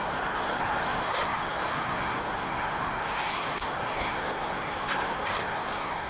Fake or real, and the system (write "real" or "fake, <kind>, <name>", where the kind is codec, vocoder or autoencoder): fake, codec, SNAC